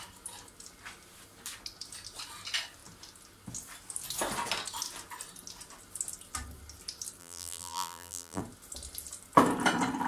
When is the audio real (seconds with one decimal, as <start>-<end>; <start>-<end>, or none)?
0.0-7.2; 8.4-10.1